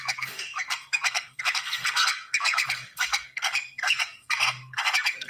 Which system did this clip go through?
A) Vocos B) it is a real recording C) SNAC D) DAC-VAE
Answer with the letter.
C